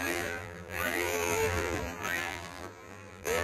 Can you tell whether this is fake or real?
fake